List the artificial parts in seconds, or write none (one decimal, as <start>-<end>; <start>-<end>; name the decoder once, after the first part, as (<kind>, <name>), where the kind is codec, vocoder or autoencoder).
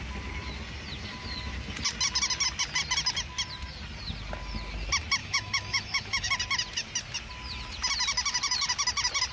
5.2-6.3 (autoencoder, DAC-VAE)